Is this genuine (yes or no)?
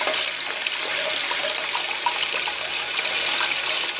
yes